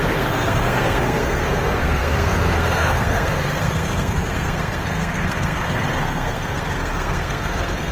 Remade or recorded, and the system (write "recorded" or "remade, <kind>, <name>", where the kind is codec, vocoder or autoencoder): remade, codec, SNAC